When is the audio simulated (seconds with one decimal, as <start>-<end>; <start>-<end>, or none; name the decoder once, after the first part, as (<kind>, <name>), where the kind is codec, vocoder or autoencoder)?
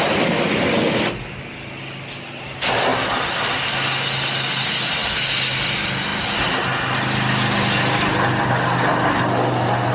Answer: none